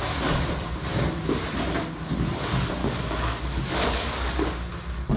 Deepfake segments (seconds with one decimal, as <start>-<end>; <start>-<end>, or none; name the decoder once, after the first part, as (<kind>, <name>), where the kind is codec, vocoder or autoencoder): 2.8-4.5 (codec, DAC)